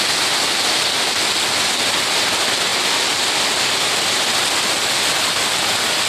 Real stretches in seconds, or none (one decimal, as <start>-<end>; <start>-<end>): 0.0-6.1